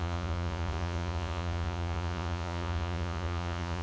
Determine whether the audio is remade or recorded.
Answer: remade